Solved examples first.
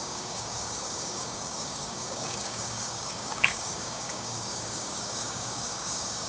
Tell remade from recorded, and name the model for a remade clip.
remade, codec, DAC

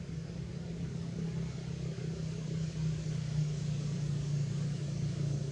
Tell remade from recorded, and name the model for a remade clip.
remade, codec, DAC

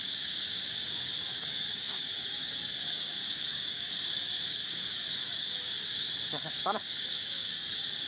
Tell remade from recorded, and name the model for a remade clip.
remade, codec, DAC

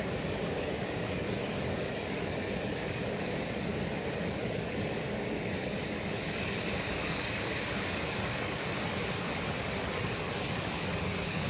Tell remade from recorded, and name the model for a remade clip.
remade, codec, DAC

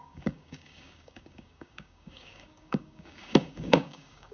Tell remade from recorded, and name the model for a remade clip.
remade, codec, DAC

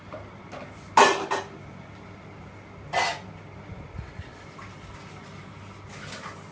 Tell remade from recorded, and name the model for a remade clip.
recorded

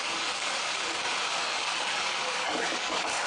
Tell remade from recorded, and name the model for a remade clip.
remade, codec, DAC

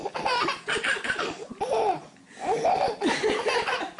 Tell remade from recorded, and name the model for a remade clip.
recorded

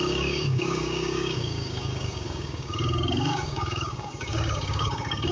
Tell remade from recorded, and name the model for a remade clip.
remade, codec, DAC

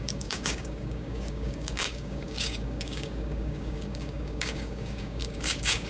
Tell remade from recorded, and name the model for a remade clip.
remade, codec, DAC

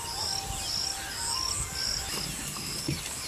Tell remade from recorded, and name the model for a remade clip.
recorded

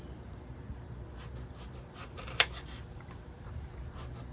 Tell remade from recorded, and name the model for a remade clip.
recorded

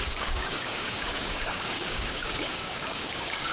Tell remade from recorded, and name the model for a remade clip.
remade, codec, DAC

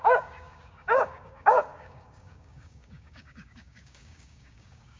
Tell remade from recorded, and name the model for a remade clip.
remade, codec, DAC